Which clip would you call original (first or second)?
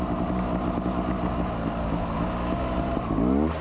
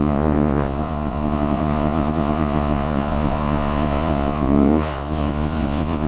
first